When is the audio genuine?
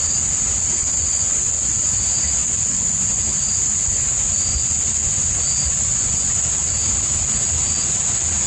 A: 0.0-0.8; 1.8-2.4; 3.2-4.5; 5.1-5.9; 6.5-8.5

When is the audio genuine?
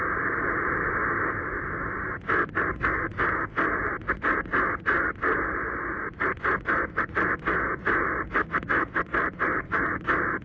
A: 0.0-10.4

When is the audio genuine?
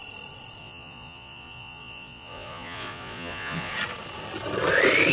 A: 0.0-0.6; 3.7-5.1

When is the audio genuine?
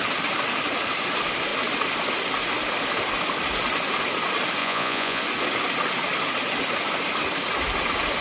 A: 0.0-4.6; 5.2-8.2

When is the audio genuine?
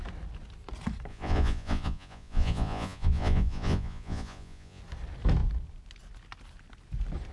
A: 0.0-1.1; 4.8-7.3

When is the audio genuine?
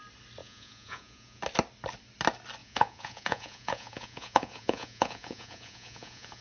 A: 0.0-0.4; 1.4-2.6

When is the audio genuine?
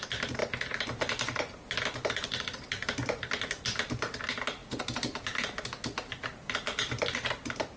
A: 0.0-7.8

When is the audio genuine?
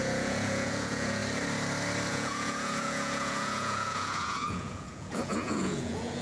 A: 1.2-2.1